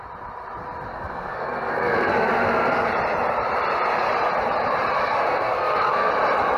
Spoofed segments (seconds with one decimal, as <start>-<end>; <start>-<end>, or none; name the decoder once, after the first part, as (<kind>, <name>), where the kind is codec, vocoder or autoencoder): 0.9-2.9 (codec, SNAC); 5.0-6.1